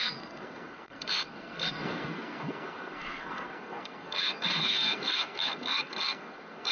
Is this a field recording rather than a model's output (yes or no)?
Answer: no